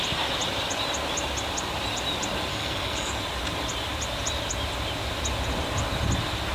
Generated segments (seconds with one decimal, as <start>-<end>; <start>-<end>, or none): 2.5-3.1